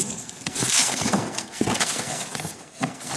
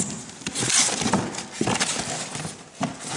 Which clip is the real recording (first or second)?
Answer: second